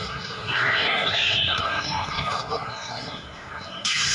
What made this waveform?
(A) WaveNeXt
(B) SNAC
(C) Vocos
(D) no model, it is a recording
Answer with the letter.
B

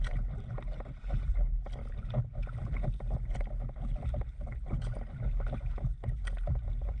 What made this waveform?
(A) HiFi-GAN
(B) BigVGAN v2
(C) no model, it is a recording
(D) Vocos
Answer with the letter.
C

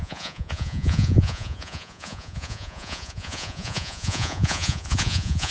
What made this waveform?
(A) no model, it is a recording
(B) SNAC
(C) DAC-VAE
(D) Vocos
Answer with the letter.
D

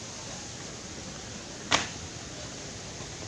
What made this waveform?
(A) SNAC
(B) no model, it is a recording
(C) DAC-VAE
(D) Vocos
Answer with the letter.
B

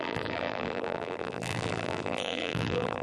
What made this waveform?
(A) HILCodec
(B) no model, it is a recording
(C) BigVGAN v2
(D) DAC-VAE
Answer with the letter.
C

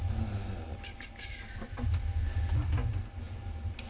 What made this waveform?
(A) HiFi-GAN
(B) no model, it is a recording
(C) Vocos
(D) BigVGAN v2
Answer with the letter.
B